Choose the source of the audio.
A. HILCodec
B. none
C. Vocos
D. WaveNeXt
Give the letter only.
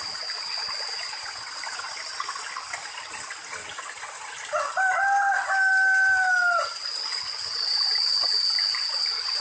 B